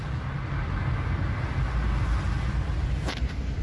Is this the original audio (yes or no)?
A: yes